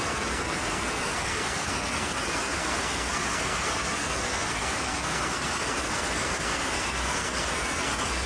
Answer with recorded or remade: remade